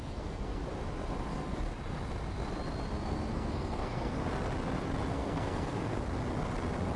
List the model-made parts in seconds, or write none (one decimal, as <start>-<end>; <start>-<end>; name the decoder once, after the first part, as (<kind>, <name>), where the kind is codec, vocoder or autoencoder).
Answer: 0.0-0.6 (codec, SNAC); 3.3-4.2; 5.1-5.9